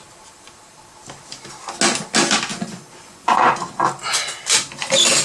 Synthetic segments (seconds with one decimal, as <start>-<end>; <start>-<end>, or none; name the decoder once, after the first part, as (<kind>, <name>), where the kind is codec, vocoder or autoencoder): 2.5-3.5 (vocoder, Vocos)